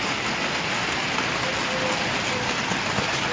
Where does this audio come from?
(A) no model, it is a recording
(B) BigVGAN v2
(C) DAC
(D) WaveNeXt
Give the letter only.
A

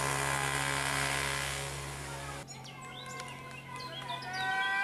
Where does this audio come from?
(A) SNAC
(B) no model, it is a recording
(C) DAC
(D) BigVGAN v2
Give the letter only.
B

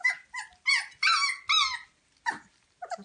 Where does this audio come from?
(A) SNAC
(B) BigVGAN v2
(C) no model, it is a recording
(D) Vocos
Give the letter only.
C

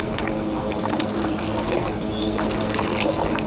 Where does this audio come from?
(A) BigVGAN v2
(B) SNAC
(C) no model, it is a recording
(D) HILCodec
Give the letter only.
B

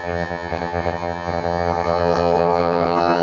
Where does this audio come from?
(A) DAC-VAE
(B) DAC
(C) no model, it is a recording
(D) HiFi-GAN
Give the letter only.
D